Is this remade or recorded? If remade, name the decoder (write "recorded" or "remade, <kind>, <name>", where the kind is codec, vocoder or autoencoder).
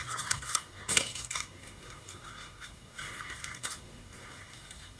remade, codec, SNAC